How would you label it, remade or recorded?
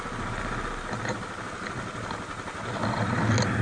recorded